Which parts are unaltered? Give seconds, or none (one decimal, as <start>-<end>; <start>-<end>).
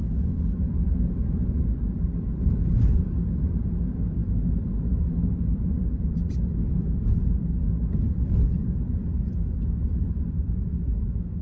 none